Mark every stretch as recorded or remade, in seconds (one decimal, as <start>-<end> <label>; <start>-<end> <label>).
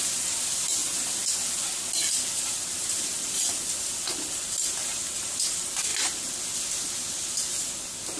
0.0-4.9 remade; 4.9-5.5 recorded; 5.5-5.9 remade; 5.9-7.3 recorded; 7.3-8.2 remade